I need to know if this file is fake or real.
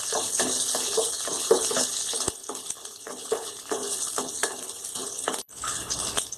fake